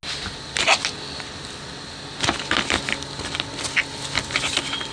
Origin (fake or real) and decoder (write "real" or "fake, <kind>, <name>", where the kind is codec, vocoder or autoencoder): real